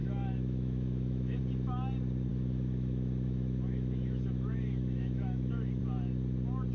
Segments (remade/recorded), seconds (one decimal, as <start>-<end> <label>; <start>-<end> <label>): 0.0-1.4 remade; 1.4-2.3 recorded; 2.3-5.8 remade; 5.8-6.7 recorded